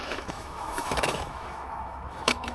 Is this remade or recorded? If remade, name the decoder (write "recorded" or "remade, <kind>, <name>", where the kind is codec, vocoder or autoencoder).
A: remade, autoencoder, DAC-VAE